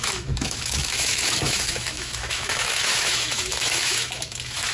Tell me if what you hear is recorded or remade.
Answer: remade